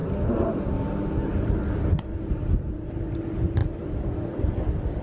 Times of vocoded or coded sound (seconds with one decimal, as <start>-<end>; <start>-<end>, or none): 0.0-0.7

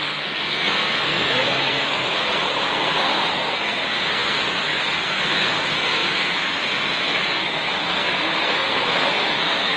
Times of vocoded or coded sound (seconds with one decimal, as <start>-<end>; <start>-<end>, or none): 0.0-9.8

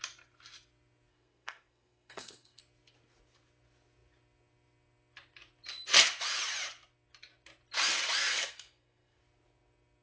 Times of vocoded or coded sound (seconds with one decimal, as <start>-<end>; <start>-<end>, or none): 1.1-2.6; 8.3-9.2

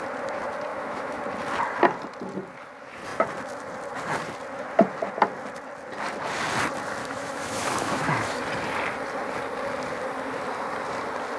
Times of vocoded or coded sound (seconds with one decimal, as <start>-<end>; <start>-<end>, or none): 0.7-1.2; 7.0-8.4

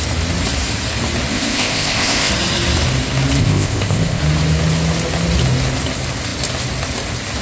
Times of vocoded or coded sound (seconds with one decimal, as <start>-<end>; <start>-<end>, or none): 1.3-2.3; 3.4-4.2